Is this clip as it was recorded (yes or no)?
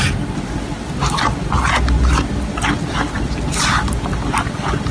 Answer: yes